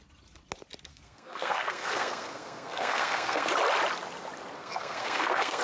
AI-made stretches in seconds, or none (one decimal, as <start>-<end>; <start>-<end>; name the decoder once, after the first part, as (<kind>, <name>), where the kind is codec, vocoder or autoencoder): 0.9-3.5 (codec, SNAC); 4.6-5.6